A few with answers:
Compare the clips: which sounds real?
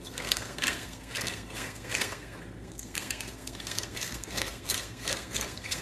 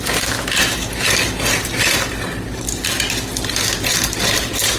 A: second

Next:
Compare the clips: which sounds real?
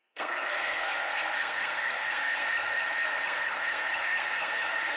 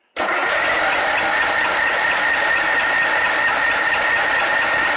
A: second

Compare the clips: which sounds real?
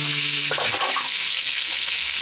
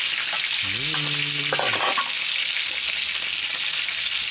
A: second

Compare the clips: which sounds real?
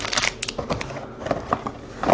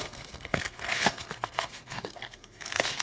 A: first